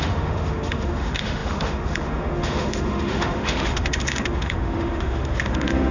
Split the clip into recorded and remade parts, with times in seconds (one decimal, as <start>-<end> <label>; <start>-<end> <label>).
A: 0.0-5.9 remade